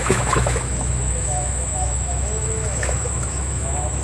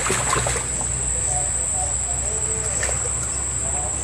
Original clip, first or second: second